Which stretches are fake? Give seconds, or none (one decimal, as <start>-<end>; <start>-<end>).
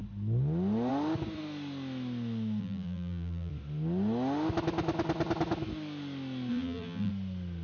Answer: 2.6-3.5; 6.5-7.1